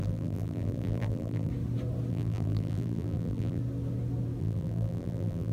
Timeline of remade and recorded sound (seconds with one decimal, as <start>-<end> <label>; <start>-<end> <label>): 0.0-1.5 remade; 1.5-2.1 recorded; 2.1-3.6 remade; 3.6-4.4 recorded; 4.4-5.5 remade